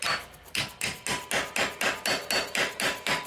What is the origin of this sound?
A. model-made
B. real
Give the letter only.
B